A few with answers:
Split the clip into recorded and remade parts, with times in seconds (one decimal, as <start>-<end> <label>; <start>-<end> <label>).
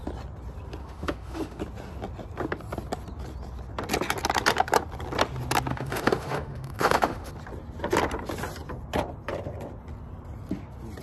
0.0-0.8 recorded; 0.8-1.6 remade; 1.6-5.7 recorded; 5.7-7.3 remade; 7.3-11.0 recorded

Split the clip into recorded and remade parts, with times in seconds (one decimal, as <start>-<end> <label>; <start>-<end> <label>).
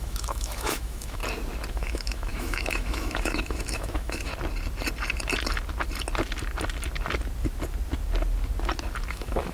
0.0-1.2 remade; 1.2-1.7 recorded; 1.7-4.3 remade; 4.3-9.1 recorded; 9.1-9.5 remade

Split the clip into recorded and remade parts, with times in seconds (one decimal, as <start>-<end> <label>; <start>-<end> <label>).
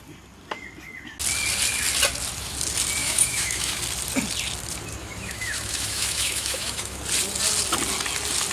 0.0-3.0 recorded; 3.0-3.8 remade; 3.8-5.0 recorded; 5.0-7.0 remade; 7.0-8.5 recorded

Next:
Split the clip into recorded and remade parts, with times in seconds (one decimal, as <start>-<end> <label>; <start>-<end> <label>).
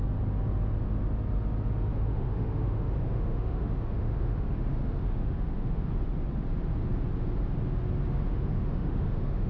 0.0-1.9 recorded; 1.9-5.9 remade; 5.9-8.3 recorded; 8.3-9.5 remade